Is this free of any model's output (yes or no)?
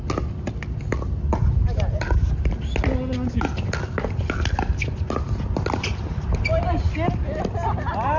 yes